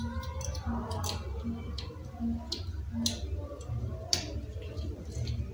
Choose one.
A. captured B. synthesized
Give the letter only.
A